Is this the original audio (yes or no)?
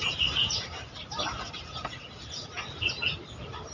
yes